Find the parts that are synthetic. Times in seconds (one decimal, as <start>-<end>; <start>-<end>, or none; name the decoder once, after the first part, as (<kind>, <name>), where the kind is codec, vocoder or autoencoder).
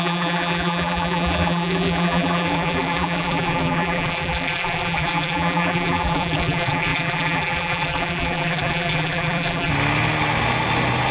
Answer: 0.0-9.7 (vocoder, BigVGAN v2)